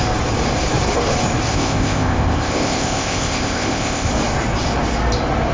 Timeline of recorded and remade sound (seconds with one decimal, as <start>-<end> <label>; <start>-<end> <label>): 0.0-1.5 recorded; 1.5-4.1 remade; 4.1-5.5 recorded